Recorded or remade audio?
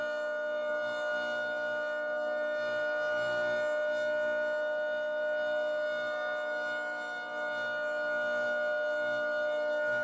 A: recorded